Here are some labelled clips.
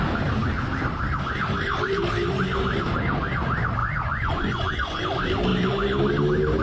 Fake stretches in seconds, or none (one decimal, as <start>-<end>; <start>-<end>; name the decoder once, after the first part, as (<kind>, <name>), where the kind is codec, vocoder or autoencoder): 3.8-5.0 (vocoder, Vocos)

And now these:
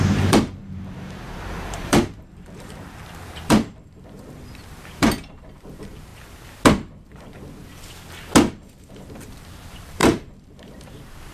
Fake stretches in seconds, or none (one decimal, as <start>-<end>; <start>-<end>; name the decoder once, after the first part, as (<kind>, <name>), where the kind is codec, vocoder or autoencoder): 0.0-6.1 (vocoder, BigVGAN v2); 8.9-11.3

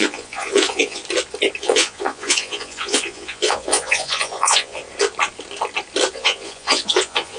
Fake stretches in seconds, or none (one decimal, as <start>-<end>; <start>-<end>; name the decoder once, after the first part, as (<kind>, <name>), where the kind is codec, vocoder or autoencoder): 0.0-1.0 (vocoder, Vocos); 1.6-4.8; 6.1-7.4

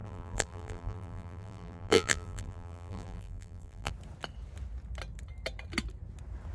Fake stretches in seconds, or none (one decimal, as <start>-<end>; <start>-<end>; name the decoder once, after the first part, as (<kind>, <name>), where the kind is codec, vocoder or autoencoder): 0.0-3.9 (vocoder, BigVGAN v2)